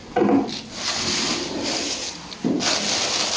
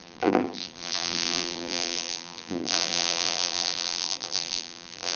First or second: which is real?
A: first